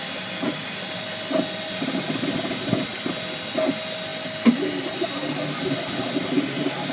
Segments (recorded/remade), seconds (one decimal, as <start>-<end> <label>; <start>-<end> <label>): 0.0-6.9 recorded